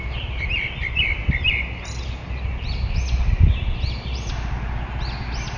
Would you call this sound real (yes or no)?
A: yes